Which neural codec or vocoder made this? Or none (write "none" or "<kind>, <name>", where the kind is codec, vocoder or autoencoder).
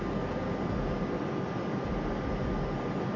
none